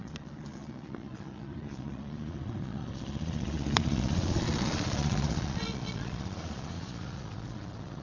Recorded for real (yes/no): no